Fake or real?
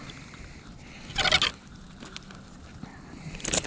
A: real